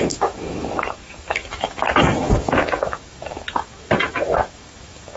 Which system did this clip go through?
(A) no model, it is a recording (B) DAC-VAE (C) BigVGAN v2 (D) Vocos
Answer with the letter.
B